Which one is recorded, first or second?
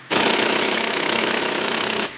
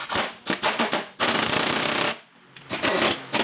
second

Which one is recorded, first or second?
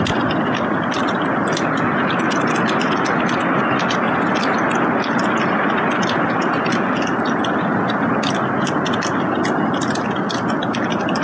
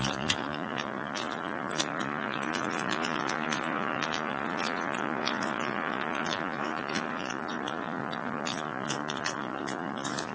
first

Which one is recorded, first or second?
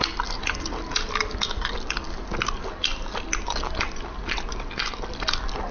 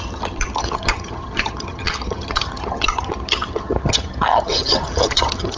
first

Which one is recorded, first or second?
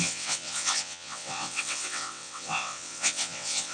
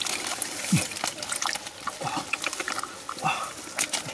second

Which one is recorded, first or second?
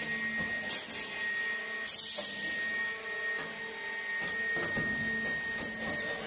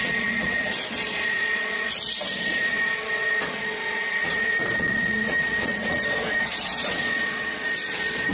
first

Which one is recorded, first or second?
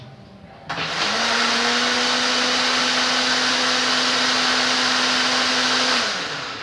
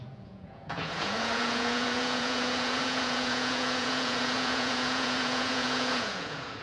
first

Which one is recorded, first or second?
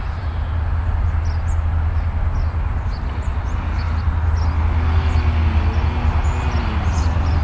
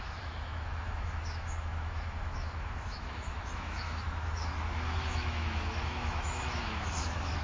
first